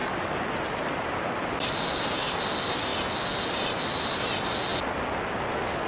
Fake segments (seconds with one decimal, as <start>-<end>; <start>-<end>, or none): none